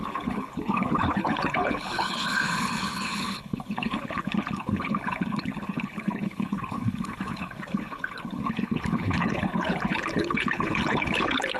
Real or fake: fake